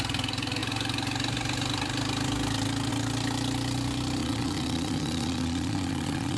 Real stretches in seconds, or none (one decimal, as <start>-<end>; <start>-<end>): 0.0-4.2